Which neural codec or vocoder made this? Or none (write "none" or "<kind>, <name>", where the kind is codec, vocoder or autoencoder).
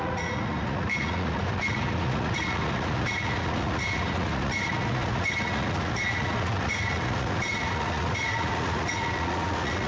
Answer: vocoder, Vocos